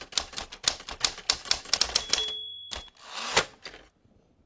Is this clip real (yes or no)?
yes